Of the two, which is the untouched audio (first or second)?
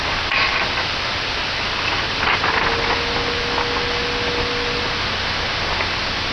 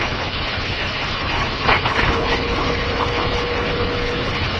first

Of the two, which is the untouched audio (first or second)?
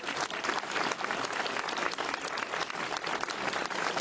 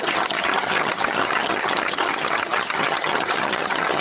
first